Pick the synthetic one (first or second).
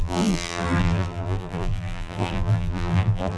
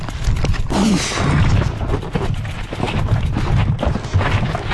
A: first